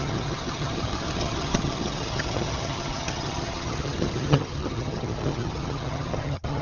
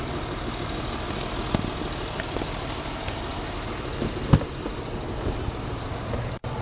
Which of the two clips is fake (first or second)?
first